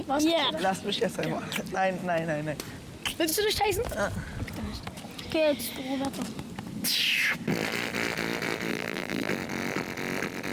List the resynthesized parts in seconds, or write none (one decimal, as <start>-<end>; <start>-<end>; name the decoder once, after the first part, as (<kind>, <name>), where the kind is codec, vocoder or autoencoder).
8.7-9.3 (vocoder, BigVGAN v2)